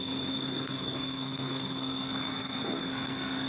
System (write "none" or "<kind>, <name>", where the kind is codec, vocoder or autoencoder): codec, SNAC